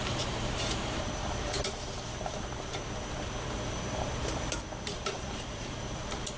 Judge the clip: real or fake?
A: fake